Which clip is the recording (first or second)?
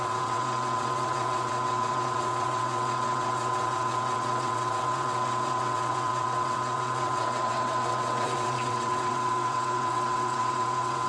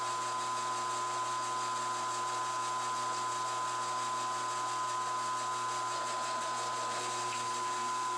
second